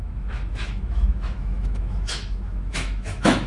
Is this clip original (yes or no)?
no